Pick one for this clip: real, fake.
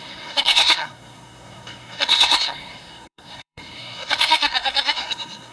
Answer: fake